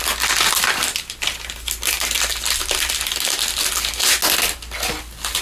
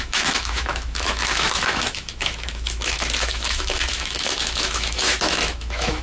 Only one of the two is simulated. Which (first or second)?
second